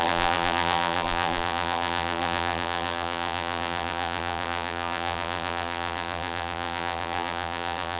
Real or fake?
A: fake